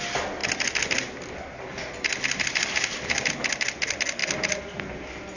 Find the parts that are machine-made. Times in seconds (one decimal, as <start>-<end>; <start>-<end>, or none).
none